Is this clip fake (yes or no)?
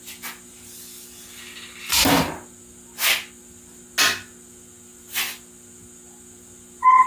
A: no